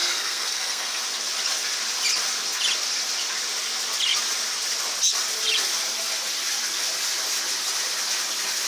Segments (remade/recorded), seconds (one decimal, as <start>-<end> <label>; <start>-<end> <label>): 0.0-1.0 remade; 1.0-8.7 recorded